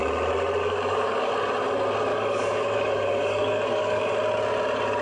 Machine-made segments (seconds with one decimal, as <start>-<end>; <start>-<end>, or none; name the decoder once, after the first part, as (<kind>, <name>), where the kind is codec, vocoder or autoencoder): 0.6-1.3 (codec, DAC); 2.1-4.0